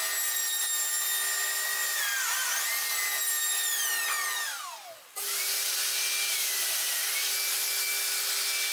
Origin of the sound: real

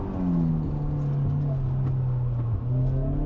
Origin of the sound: real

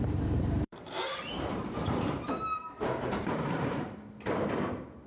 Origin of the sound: fake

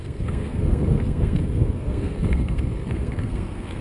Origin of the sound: fake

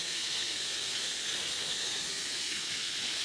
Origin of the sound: fake